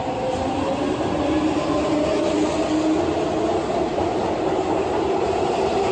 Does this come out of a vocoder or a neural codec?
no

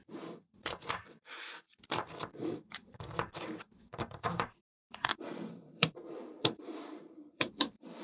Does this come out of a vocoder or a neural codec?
yes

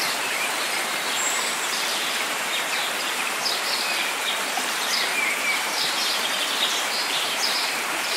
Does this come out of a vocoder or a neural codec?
yes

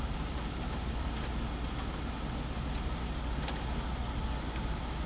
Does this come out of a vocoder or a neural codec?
no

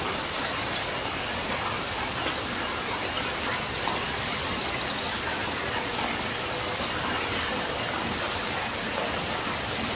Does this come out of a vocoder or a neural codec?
no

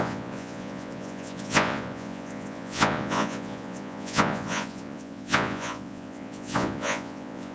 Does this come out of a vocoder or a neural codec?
yes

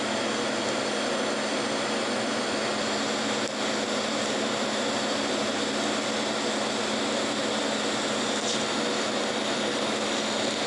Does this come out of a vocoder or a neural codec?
no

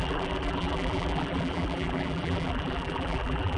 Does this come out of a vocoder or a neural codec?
yes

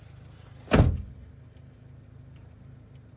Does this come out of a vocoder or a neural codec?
no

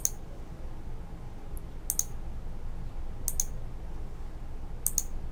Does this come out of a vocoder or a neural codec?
no